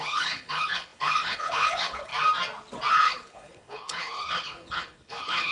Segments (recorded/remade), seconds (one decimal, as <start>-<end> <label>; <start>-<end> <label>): 0.0-2.1 remade; 2.1-2.9 recorded; 2.9-5.5 remade